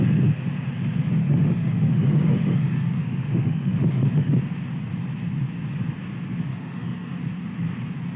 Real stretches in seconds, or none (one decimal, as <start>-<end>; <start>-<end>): 0.0-1.2; 4.3-6.5; 7.2-8.2